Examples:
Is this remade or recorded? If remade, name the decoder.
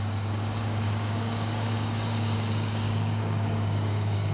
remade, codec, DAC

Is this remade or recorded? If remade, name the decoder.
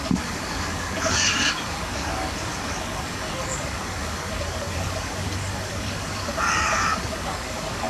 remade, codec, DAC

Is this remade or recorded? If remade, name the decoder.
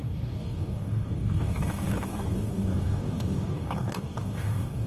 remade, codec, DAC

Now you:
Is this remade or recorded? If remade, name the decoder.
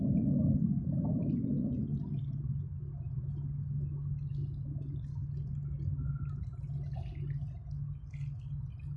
recorded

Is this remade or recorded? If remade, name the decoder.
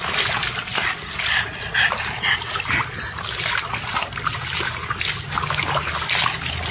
recorded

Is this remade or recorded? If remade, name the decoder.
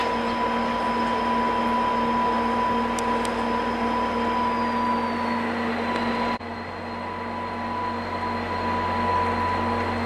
recorded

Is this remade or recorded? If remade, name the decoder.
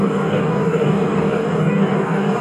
remade, codec, DAC